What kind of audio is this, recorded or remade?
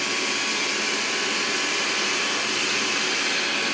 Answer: recorded